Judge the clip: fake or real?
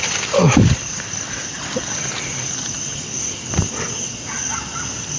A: real